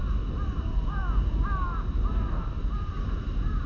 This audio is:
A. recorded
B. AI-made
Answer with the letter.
A